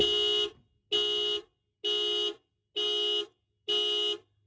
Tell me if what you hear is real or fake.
real